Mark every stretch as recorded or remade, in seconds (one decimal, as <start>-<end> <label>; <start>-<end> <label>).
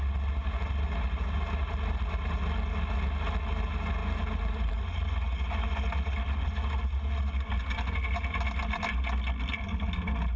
0.0-4.0 recorded; 4.0-4.7 remade; 4.7-10.4 recorded